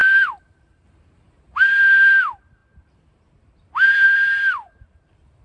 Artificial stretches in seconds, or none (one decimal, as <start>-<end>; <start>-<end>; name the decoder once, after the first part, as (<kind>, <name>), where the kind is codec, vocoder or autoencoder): 0.0-5.4 (vocoder, BigVGAN v2)